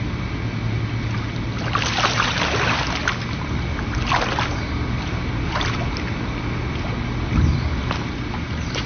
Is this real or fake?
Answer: real